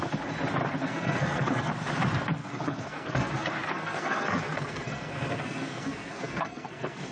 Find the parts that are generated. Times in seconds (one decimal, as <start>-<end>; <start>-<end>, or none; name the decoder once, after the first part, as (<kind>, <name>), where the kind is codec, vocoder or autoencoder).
0.8-1.7 (codec, SNAC); 2.4-7.1